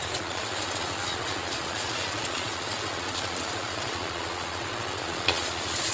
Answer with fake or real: fake